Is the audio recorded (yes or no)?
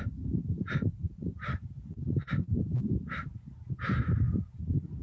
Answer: no